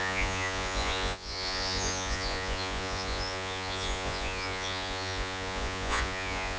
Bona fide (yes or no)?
no